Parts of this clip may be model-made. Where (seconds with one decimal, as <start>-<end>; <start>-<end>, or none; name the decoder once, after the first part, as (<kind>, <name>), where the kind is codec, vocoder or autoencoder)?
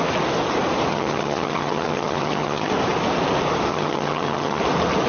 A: 0.9-2.7 (vocoder, HiFi-GAN); 3.7-4.6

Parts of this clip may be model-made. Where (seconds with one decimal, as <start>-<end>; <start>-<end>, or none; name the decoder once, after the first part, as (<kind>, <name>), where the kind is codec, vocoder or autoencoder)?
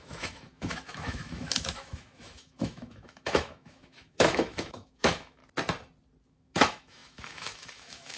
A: 0.0-5.4 (autoencoder, DAC-VAE); 6.3-8.2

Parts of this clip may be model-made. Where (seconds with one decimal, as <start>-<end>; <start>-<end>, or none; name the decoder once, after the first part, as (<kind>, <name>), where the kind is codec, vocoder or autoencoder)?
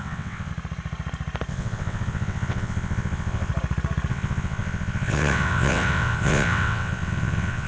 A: 0.0-0.5 (vocoder, WaveNeXt); 1.5-3.5; 4.1-7.7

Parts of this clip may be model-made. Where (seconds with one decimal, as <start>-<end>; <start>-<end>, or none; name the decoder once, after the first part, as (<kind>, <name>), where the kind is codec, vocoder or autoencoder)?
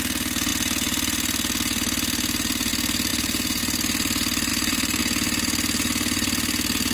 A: 3.1-3.6 (vocoder, BigVGAN v2); 4.5-5.0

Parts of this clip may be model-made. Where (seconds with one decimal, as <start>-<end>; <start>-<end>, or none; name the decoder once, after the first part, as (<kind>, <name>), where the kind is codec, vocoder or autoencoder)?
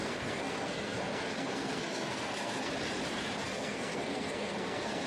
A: 0.0-2.7 (codec, SNAC); 3.4-5.1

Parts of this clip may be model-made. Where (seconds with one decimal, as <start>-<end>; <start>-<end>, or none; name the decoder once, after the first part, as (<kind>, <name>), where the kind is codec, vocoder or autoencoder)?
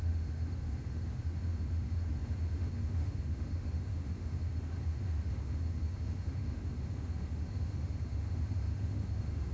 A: 0.0-9.5 (autoencoder, DAC-VAE)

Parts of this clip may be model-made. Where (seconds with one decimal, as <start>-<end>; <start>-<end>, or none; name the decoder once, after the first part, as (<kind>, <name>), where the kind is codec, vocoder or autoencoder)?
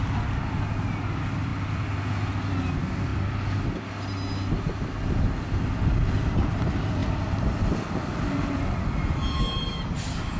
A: none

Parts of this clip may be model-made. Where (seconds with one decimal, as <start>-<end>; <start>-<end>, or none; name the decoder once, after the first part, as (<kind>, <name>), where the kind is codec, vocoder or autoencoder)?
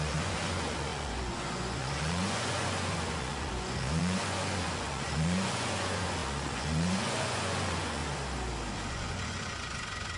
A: 0.0-8.0 (vocoder, Vocos); 8.9-10.2